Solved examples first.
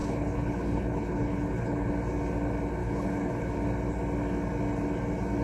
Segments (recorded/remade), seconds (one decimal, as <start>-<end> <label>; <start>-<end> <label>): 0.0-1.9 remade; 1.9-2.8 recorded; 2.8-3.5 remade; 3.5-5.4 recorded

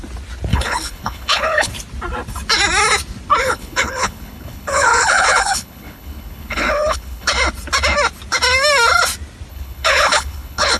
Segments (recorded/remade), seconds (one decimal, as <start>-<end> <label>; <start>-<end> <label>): 0.0-0.5 recorded; 0.5-1.7 remade; 1.7-3.4 recorded; 3.4-7.3 remade; 7.3-9.5 recorded; 9.5-10.8 remade

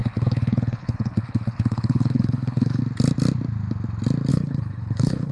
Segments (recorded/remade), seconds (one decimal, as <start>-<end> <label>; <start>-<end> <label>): 0.0-2.8 remade; 2.8-4.3 recorded; 4.3-5.3 remade

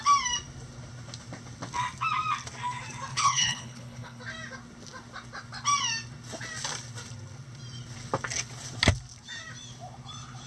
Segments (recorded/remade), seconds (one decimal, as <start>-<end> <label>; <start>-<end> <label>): 0.0-3.1 recorded; 3.1-4.2 remade; 4.2-10.5 recorded

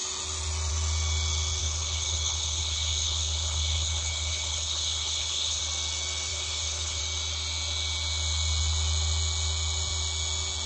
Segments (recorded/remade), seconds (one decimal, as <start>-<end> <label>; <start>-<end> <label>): 0.0-1.6 recorded; 1.6-5.6 remade; 5.6-6.3 recorded; 6.3-7.0 remade; 7.0-10.7 recorded

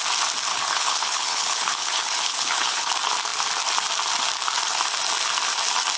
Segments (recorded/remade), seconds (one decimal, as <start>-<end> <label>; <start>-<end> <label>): 0.0-0.5 recorded; 0.5-2.9 remade; 2.9-6.0 recorded

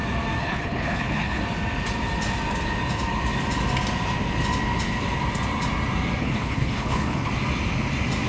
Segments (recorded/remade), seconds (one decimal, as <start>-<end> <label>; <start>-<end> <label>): 0.0-0.4 recorded; 0.4-1.4 remade; 1.4-6.2 recorded; 6.2-7.3 remade; 7.3-8.3 recorded